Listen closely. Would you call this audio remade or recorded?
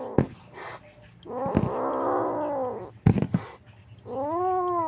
recorded